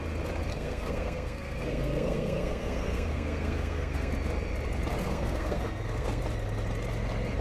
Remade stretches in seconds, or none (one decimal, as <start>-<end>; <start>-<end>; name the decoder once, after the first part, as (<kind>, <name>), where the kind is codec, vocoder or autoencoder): 0.5-4.1 (codec, SNAC); 5.0-6.2